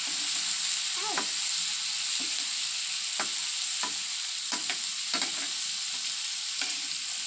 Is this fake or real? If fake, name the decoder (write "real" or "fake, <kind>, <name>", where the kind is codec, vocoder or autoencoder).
real